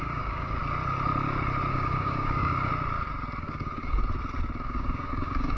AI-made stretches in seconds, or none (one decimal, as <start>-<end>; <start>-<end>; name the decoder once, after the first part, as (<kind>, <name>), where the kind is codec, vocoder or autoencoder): 0.0-0.6 (codec, DAC); 1.7-2.7; 3.4-4.0; 4.6-5.6